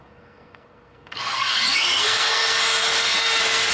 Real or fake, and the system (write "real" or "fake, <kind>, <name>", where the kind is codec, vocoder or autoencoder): fake, codec, SNAC